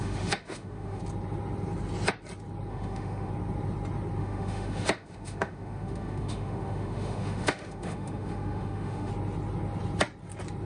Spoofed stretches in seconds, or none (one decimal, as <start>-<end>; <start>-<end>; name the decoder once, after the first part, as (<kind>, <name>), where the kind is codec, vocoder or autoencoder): 0.0-1.0 (autoencoder, DAC-VAE); 2.7-3.3; 4.2-9.1